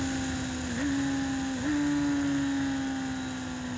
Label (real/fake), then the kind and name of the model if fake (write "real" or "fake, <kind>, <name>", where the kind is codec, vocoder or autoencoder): real